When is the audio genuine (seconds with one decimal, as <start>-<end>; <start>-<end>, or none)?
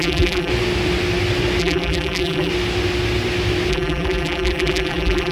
0.5-1.6; 2.5-3.7